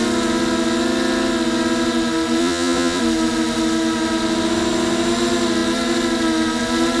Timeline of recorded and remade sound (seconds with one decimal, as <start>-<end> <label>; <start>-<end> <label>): 0.0-2.4 recorded; 2.4-3.0 remade; 3.0-7.0 recorded